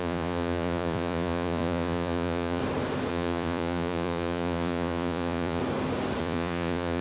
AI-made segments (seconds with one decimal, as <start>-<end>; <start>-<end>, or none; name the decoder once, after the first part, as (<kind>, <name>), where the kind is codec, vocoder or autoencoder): 0.0-2.6 (vocoder, Vocos); 3.1-5.6; 6.2-7.0